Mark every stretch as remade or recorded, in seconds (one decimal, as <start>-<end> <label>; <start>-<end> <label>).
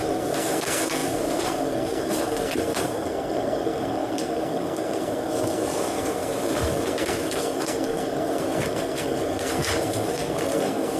0.0-11.0 remade